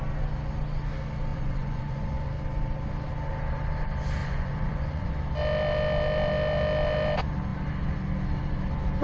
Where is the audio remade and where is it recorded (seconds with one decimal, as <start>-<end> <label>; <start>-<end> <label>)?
0.0-1.3 recorded; 1.3-2.3 remade; 2.3-4.2 recorded; 4.2-5.1 remade; 5.1-9.0 recorded